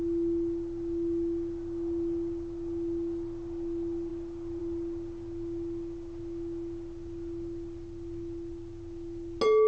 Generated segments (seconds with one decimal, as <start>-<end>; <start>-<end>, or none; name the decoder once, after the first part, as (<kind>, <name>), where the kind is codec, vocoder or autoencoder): none

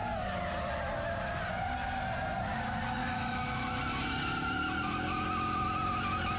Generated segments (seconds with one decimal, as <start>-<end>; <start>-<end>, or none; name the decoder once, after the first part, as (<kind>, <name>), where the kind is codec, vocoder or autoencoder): 3.0-3.8 (autoencoder, DAC-VAE)

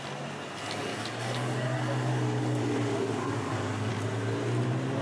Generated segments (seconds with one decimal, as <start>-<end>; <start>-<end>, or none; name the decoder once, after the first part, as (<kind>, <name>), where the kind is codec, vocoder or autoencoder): 0.9-3.9 (codec, DAC)

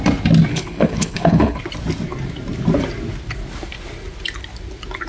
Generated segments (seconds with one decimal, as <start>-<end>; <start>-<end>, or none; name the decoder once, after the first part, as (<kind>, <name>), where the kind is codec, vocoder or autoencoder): 0.5-1.6 (codec, HILCodec)

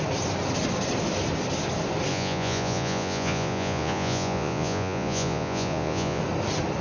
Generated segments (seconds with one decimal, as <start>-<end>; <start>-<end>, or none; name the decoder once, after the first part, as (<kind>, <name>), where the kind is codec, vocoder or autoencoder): 2.1-6.2 (vocoder, Vocos)

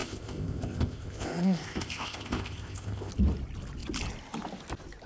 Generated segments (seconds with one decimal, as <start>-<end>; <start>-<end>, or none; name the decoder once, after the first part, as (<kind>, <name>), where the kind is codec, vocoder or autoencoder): 0.0-3.1 (codec, ZipCodec)

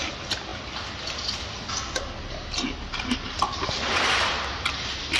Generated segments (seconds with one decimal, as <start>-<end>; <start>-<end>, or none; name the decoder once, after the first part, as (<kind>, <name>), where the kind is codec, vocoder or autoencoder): none

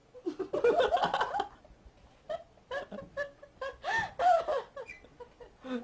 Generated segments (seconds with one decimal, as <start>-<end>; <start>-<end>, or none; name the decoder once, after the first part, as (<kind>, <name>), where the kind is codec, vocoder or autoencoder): none